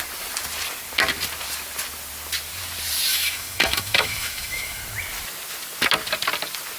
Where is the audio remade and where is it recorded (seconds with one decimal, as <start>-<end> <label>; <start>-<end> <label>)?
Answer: 0.0-3.1 recorded; 3.1-4.8 remade; 4.8-6.8 recorded